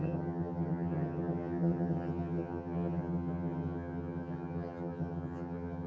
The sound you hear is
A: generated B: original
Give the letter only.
A